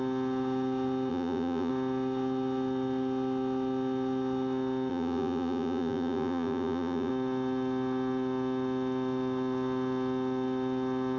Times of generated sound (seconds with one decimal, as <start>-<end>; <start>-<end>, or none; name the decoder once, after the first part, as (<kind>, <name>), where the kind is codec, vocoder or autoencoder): 1.1-1.7 (vocoder, Vocos); 4.9-7.1